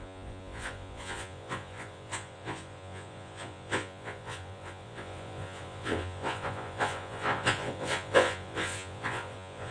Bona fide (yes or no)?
no